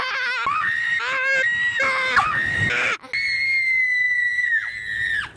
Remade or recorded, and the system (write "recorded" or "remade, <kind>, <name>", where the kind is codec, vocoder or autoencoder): recorded